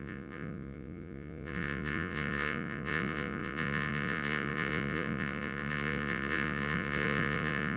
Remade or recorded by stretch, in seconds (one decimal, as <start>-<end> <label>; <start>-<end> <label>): 0.0-7.8 remade